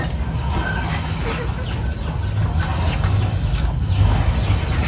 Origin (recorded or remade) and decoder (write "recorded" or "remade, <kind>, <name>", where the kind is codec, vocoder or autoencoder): recorded